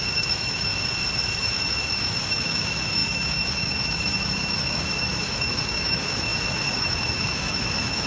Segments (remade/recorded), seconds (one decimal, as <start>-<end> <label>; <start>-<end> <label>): 0.0-0.7 remade; 0.7-1.3 recorded; 1.3-8.1 remade